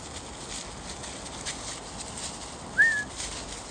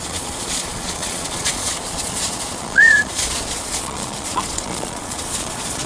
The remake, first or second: second